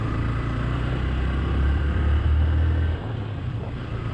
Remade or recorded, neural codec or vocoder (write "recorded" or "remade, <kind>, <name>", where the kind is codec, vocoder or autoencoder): remade, vocoder, BigVGAN v2